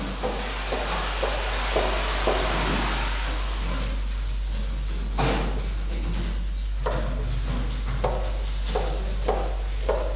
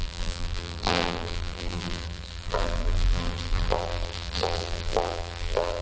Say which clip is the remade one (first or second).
second